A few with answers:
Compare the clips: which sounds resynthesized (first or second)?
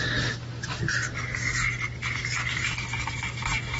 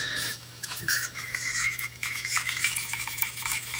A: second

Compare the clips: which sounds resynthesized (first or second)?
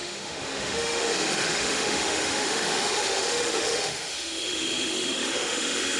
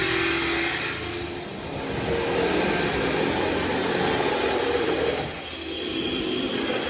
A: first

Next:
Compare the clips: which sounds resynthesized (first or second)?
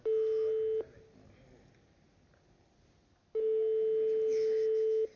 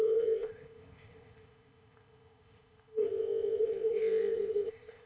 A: second